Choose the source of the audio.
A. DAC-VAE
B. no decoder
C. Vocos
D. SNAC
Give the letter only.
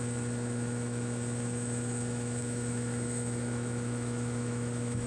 A